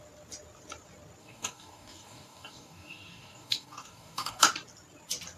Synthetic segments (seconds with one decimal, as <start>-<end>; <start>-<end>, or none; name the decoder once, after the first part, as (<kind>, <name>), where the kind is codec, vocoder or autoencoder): 1.2-4.4 (codec, DAC)